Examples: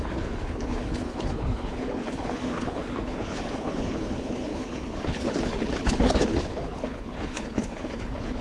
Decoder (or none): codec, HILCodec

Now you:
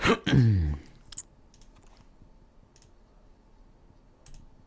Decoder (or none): none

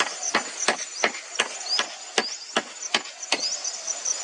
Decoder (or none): none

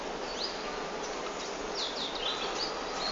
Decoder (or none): none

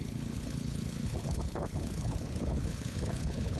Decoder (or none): codec, HILCodec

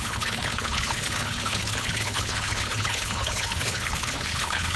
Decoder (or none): codec, HILCodec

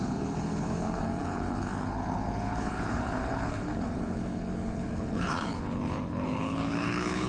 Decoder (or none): codec, HILCodec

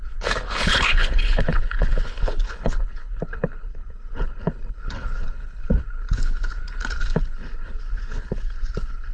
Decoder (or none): codec, HILCodec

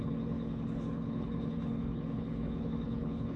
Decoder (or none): codec, HILCodec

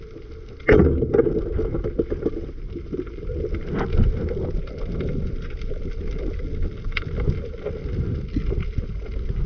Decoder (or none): none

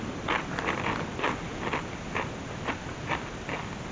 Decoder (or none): none